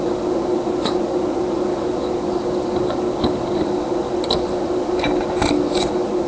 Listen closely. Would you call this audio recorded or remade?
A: recorded